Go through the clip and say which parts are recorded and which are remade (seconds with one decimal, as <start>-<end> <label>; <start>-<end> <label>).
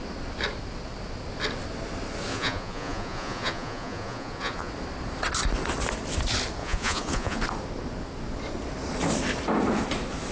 0.0-2.3 recorded; 2.3-4.7 remade; 4.7-6.6 recorded; 6.6-7.4 remade; 7.4-10.3 recorded